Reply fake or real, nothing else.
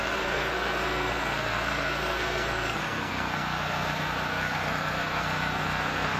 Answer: fake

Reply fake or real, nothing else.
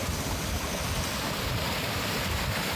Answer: real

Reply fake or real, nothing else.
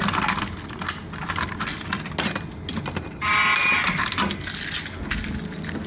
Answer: real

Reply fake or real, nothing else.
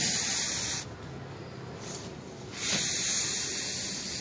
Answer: real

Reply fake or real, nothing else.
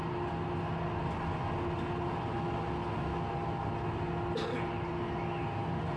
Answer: real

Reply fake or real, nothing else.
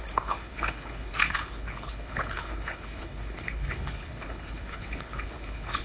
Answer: fake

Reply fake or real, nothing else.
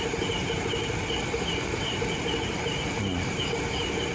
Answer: real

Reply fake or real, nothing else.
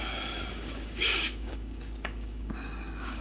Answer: fake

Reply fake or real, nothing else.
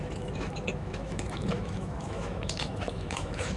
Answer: fake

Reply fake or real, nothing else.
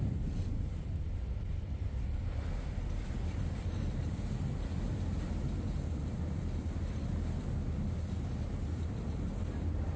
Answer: fake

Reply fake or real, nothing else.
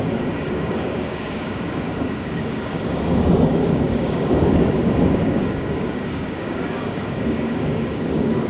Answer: fake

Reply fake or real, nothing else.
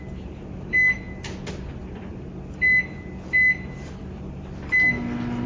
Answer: real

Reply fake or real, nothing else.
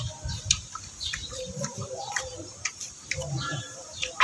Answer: fake